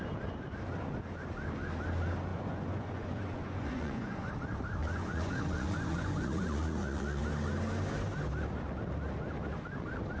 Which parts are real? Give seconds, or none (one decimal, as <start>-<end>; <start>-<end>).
0.0-2.3; 4.3-4.8; 7.2-10.2